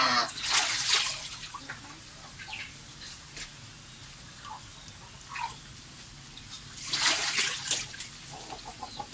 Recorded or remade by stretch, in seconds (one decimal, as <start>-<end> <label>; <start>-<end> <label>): 0.0-9.1 recorded